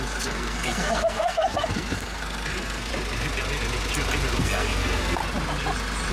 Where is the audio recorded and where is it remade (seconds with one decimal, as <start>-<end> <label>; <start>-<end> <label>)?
0.0-2.9 remade; 2.9-4.4 recorded; 4.4-5.2 remade; 5.2-6.1 recorded